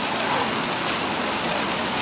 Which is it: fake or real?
real